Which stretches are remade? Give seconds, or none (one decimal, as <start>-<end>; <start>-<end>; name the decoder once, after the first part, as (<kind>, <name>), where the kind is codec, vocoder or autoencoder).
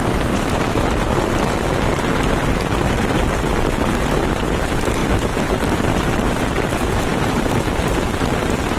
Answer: 0.0-8.8 (vocoder, BigVGAN v2)